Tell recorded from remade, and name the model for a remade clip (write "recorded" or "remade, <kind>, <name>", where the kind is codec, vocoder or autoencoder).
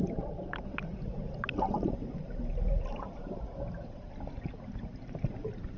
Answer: recorded